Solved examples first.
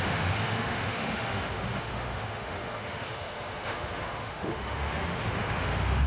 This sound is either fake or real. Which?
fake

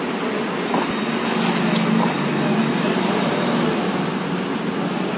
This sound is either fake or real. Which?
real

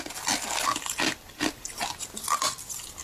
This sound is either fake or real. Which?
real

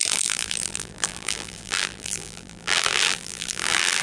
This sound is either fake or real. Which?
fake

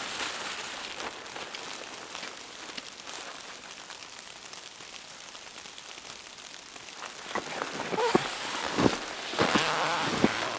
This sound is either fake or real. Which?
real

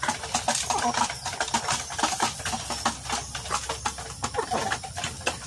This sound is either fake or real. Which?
real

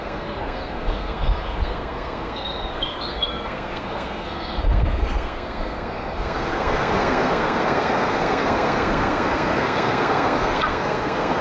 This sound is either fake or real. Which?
fake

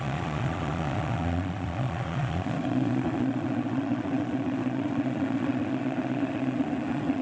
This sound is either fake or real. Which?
fake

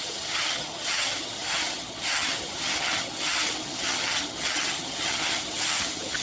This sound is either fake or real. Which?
fake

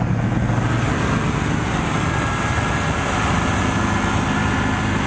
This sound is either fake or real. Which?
real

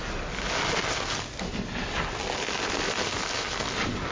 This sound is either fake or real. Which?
real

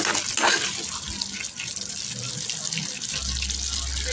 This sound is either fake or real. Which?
real